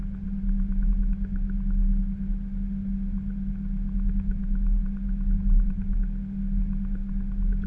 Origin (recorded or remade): recorded